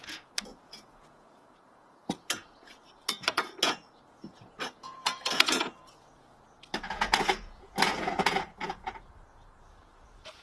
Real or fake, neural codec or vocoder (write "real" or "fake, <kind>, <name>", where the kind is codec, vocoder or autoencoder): fake, vocoder, Vocos